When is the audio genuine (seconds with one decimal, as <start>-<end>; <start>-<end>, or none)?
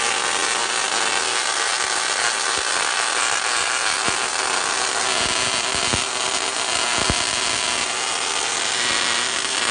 0.0-9.7